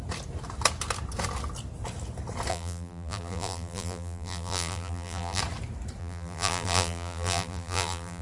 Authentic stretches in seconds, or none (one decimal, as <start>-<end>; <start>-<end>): 0.0-2.5; 5.4-6.0